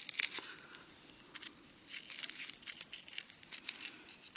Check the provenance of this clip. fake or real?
real